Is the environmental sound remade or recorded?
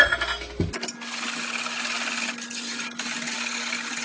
recorded